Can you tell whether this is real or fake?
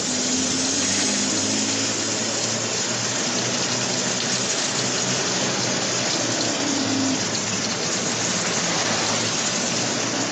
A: real